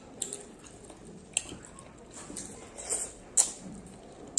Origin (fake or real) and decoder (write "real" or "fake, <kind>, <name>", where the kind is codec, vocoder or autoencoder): real